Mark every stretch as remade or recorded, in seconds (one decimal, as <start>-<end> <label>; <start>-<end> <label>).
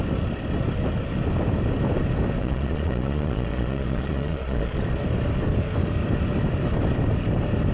0.0-2.4 recorded; 2.4-4.8 remade; 4.8-7.7 recorded